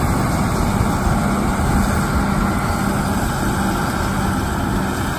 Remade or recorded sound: recorded